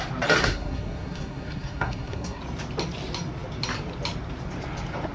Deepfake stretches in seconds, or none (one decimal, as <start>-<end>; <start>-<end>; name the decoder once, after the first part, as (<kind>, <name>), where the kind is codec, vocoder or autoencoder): 0.4-2.4 (codec, SNAC)